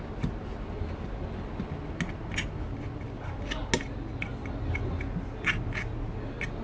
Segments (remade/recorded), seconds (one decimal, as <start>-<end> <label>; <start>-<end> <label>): 0.0-6.6 recorded